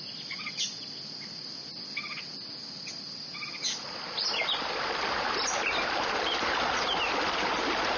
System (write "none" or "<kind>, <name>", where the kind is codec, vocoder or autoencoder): none